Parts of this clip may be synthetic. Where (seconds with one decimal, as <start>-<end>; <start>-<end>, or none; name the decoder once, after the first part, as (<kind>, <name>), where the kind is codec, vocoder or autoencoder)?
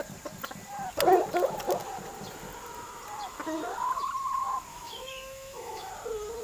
4.7-5.9 (autoencoder, DAC-VAE)